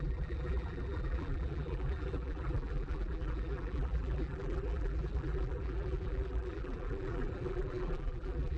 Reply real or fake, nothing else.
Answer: fake